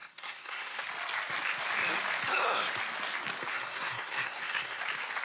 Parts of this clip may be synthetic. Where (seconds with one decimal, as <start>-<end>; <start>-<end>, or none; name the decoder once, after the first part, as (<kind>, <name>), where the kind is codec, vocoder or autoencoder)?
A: 0.0-0.8 (codec, SNAC); 3.5-4.8